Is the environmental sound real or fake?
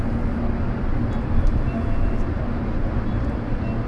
real